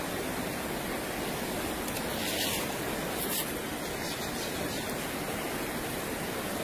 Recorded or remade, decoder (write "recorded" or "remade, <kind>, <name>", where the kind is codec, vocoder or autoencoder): recorded